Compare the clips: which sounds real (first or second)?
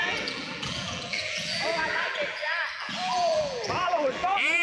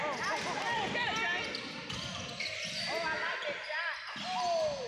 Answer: second